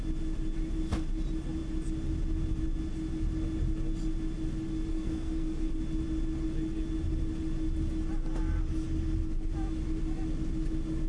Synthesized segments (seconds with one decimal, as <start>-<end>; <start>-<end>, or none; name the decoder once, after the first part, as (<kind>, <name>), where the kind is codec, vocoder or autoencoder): 4.9-5.7 (codec, SNAC)